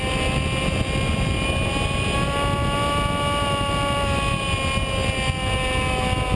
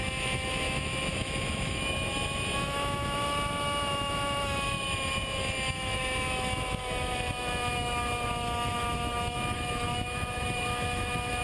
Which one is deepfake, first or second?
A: second